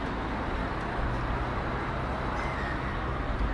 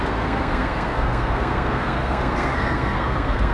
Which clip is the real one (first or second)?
first